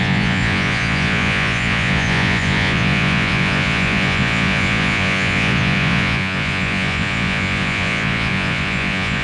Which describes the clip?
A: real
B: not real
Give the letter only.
B